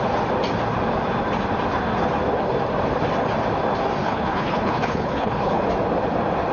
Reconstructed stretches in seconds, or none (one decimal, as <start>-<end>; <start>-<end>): 4.0-5.6